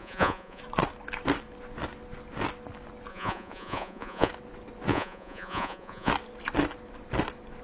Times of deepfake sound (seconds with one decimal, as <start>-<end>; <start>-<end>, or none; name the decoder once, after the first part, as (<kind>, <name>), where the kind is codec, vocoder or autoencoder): 0.0-0.6 (vocoder, Vocos); 3.1-4.3; 4.9-6.1